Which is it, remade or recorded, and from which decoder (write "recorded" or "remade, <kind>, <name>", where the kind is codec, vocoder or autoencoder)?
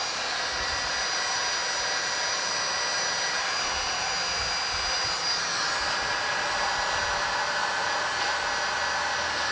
recorded